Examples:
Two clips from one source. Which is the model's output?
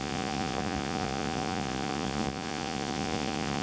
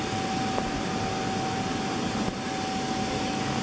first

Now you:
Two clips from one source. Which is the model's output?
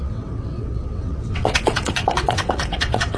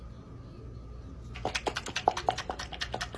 first